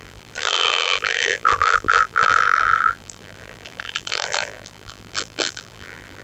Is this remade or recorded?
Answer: remade